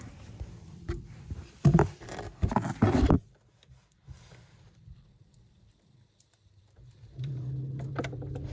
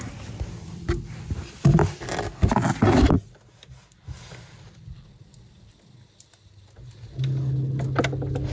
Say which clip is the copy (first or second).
first